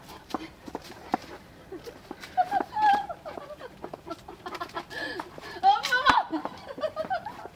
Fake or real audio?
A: fake